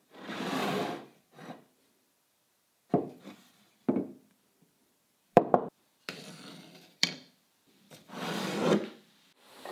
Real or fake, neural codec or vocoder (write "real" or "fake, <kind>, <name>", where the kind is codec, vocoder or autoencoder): fake, vocoder, BigVGAN v2